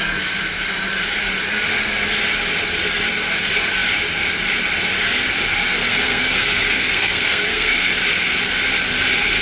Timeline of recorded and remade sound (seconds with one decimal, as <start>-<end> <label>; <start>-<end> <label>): 0.0-5.8 recorded; 5.8-7.9 remade; 7.9-9.4 recorded